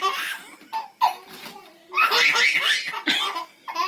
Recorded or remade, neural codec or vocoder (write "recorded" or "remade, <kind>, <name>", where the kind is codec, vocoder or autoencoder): recorded